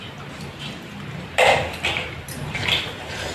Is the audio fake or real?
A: real